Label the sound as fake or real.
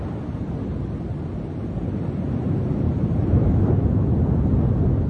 real